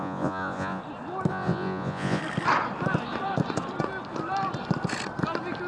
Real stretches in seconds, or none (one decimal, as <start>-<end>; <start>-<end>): 0.8-1.3; 2.2-5.7